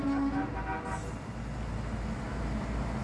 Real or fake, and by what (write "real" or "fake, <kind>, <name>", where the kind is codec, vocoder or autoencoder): real